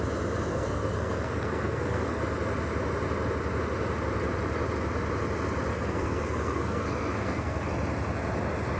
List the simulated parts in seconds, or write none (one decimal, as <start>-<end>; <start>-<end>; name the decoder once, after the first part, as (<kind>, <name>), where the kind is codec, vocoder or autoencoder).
0.5-2.2 (codec, SNAC); 5.7-7.7